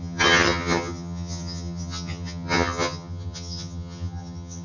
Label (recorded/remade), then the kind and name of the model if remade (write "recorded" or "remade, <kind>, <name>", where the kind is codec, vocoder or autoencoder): remade, vocoder, HiFi-GAN